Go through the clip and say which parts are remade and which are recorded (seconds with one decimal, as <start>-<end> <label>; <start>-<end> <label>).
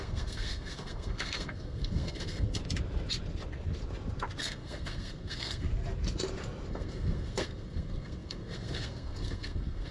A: 0.0-2.6 remade; 2.6-4.4 recorded; 4.4-5.7 remade; 5.7-6.7 recorded; 6.7-9.9 remade